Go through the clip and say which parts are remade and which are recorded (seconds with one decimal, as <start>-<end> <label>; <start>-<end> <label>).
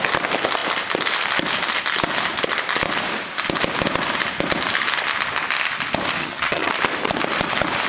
0.0-6.2 recorded; 6.2-6.7 remade; 6.7-7.9 recorded